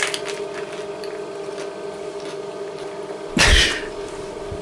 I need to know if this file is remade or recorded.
recorded